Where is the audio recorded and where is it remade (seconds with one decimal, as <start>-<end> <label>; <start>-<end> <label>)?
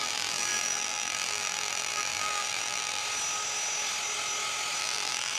0.0-3.0 remade; 3.0-4.8 recorded; 4.8-5.4 remade